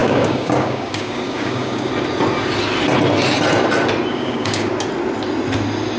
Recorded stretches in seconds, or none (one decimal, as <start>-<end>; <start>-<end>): 1.9-4.1; 4.7-6.0